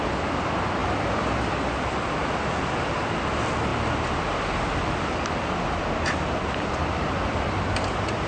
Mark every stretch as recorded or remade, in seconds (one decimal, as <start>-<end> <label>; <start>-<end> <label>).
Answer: 0.0-0.8 recorded; 0.8-2.2 remade; 2.2-3.7 recorded; 3.7-7.5 remade; 7.5-8.3 recorded